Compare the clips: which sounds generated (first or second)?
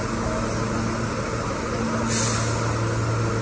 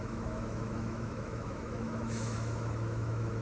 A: second